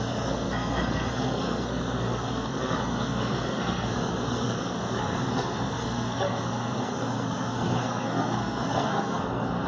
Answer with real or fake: fake